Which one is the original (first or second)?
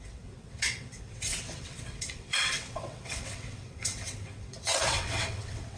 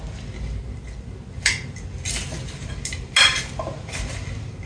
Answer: second